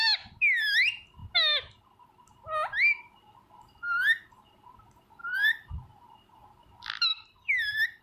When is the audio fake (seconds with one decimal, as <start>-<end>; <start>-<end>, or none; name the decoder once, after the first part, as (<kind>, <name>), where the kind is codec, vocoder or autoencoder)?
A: 5.2-5.7 (vocoder, BigVGAN v2); 7.1-8.0

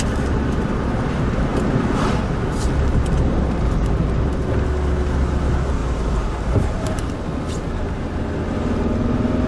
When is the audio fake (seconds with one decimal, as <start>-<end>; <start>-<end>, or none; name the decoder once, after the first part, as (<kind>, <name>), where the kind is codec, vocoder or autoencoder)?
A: 1.5-2.2 (vocoder, BigVGAN v2); 5.8-7.2

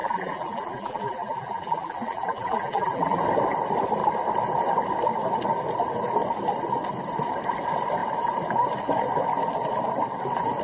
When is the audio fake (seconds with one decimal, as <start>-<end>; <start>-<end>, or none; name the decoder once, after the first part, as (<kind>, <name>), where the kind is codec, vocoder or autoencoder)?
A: 0.0-3.2 (vocoder, BigVGAN v2)